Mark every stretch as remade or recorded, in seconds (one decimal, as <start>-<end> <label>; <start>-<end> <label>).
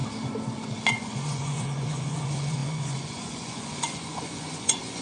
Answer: 0.0-0.9 recorded; 0.9-5.0 remade